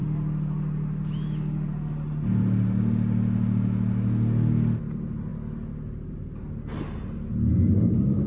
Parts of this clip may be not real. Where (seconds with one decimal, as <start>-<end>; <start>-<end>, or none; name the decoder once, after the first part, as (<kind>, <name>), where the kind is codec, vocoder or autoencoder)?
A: none